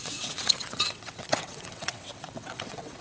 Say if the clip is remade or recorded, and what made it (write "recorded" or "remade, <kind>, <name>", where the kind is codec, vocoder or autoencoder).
remade, vocoder, WaveNeXt